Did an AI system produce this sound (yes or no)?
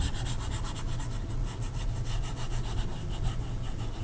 no